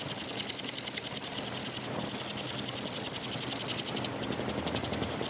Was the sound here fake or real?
real